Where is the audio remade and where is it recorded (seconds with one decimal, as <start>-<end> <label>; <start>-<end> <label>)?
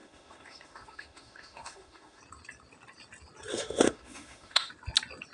0.0-2.2 remade; 2.2-3.5 recorded; 3.5-4.7 remade; 4.7-5.3 recorded